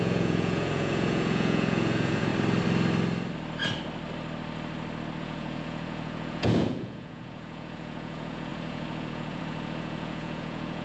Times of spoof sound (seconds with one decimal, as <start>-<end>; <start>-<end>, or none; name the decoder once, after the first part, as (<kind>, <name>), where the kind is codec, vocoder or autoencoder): 0.0-2.3 (vocoder, Vocos); 5.2-10.8